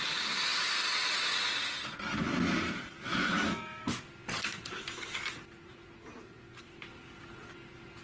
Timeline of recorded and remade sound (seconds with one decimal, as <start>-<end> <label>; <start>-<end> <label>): 0.0-3.1 recorded; 3.1-4.0 remade; 4.0-8.0 recorded